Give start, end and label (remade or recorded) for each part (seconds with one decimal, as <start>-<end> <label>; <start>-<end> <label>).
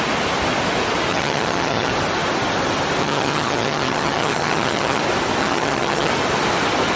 0.0-1.1 recorded; 1.1-1.9 remade; 1.9-3.0 recorded; 3.0-5.0 remade; 5.0-5.4 recorded; 5.4-6.1 remade; 6.1-7.0 recorded